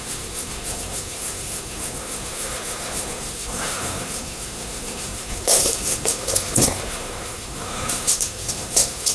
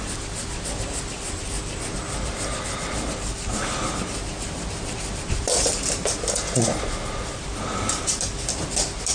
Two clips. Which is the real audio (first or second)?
second